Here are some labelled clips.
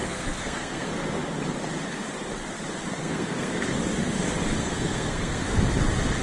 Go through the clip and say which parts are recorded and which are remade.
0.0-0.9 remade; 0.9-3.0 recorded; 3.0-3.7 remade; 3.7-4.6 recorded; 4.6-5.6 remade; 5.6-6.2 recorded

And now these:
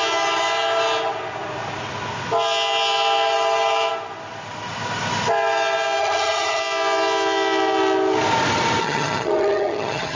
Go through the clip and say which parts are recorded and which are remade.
0.0-6.0 recorded; 6.0-6.6 remade; 6.6-8.8 recorded; 8.8-10.2 remade

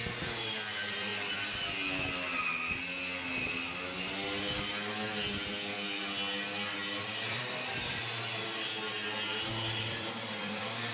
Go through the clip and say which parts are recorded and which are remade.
0.0-1.1 remade; 1.1-5.5 recorded; 5.5-6.0 remade; 6.0-7.0 recorded; 7.0-8.7 remade; 8.7-9.5 recorded; 9.5-10.9 remade

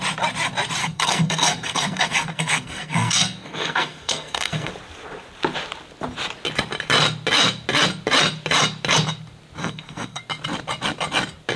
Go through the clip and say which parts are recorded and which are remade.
0.0-0.8 recorded; 0.8-4.7 remade; 4.7-9.6 recorded; 9.6-10.2 remade; 10.2-11.6 recorded

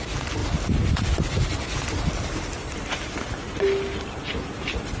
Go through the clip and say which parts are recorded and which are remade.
0.0-5.0 recorded